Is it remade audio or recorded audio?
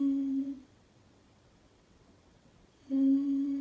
remade